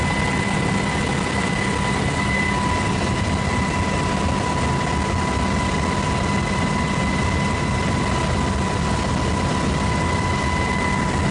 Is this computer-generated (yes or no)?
no